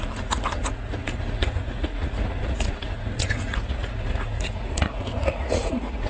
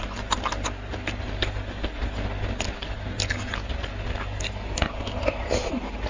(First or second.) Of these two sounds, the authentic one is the second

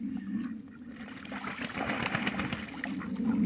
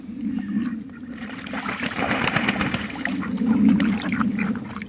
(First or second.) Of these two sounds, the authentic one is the first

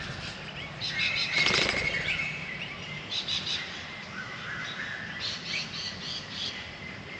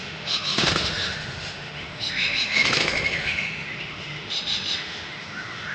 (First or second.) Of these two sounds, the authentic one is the first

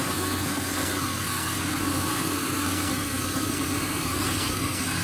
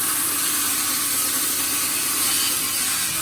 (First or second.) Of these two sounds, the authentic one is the second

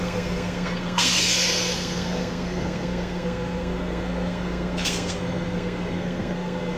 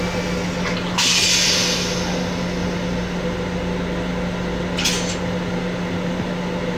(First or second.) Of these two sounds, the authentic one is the second